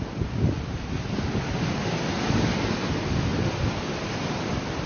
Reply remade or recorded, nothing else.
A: recorded